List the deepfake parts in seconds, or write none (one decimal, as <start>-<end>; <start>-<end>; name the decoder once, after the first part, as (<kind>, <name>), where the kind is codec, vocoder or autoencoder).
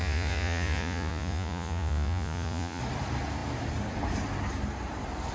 0.0-2.8 (vocoder, Vocos)